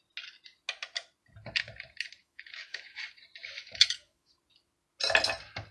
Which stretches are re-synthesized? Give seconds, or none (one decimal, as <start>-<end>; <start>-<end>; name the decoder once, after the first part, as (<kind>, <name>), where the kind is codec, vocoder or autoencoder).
2.2-3.0 (autoencoder, DAC-VAE); 3.4-4.3